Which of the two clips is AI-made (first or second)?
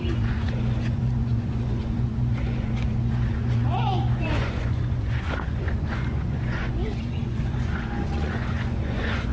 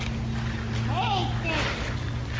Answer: first